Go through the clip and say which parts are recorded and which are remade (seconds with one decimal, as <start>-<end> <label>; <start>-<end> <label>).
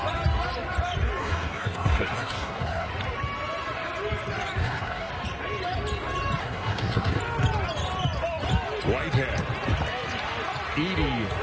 0.0-1.2 recorded; 1.2-2.9 remade; 2.9-4.6 recorded; 4.6-5.1 remade; 5.1-6.4 recorded; 6.4-7.2 remade; 7.2-11.4 recorded